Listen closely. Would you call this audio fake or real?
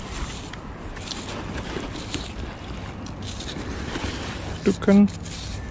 real